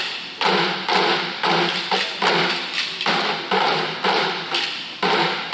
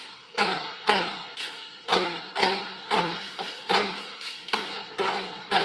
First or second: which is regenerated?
second